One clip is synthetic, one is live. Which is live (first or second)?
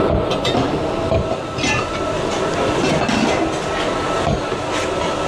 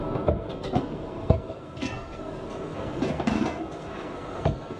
first